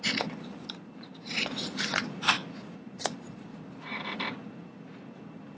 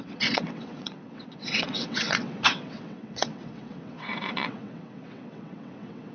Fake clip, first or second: second